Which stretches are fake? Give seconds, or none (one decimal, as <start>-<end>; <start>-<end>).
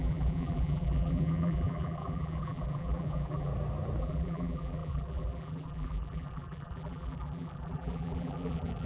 0.0-3.5; 4.0-8.9